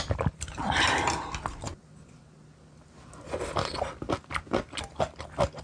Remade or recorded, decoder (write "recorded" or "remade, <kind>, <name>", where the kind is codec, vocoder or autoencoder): recorded